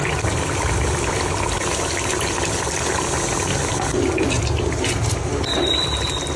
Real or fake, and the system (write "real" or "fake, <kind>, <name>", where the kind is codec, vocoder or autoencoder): real